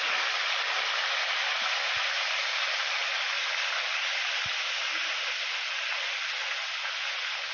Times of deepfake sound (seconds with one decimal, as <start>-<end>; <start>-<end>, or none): none